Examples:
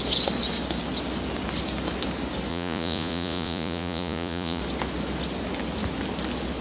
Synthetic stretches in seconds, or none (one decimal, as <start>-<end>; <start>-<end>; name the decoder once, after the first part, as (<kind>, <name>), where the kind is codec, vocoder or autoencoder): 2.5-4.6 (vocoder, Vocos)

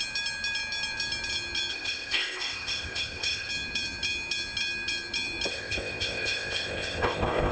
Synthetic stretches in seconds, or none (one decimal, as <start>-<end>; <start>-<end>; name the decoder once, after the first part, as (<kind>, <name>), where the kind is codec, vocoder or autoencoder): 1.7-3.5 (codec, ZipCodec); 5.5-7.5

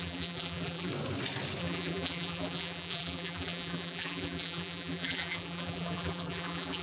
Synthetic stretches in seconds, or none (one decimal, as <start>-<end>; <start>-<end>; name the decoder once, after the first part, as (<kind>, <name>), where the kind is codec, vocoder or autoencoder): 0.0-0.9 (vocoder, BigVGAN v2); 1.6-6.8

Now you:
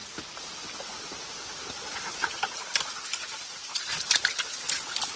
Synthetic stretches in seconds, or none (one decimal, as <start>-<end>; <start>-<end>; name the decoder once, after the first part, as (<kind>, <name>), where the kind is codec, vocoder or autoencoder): 1.9-2.5 (vocoder, BigVGAN v2)